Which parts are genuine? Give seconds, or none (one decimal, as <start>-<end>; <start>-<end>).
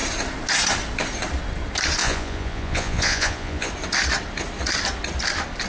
0.0-2.0; 3.7-5.7